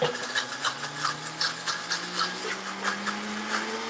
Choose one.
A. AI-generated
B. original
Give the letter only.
B